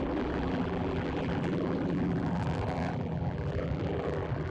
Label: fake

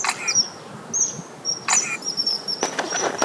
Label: real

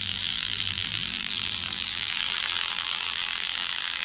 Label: fake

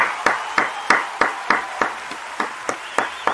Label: real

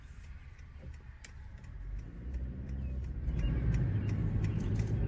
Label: fake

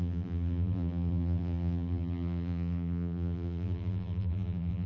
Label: fake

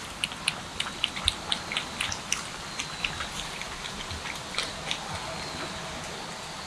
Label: real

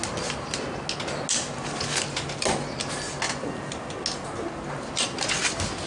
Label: real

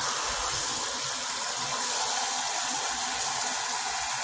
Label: real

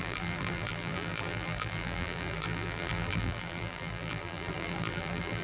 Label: fake